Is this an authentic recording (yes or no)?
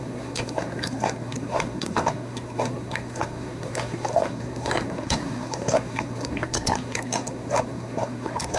no